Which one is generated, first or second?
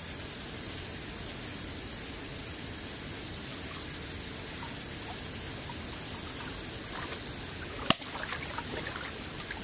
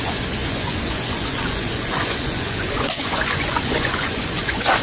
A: second